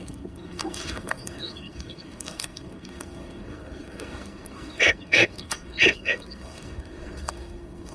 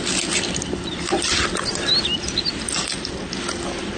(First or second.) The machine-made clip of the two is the first